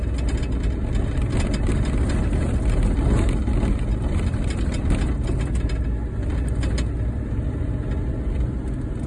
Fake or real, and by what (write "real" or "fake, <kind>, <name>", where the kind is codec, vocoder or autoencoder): real